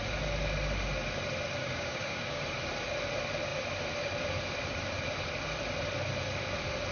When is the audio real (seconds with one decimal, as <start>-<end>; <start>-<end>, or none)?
0.0-1.6; 2.4-6.9